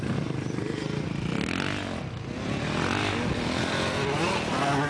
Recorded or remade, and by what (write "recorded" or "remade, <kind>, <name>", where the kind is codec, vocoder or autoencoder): recorded